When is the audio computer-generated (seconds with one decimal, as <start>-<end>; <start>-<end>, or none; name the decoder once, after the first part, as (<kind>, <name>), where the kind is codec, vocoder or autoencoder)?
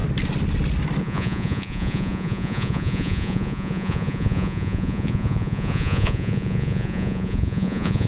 1.0-8.1 (vocoder, Vocos)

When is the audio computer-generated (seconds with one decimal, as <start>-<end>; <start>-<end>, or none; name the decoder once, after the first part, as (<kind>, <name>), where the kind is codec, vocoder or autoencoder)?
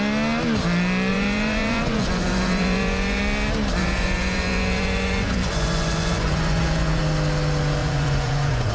1.1-3.2 (vocoder, Vocos); 3.8-7.0; 7.8-8.7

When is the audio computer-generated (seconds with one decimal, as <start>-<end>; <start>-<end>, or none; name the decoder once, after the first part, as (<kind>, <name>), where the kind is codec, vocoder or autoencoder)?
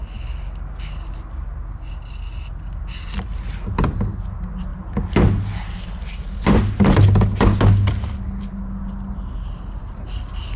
none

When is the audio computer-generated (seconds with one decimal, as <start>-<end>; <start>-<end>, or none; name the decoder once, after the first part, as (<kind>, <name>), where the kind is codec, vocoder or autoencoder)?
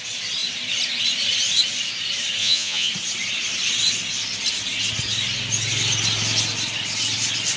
2.4-2.9 (vocoder, Vocos)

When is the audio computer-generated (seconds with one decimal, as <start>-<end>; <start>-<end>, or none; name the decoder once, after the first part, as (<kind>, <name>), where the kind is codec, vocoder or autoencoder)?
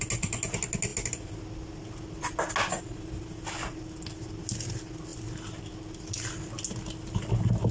none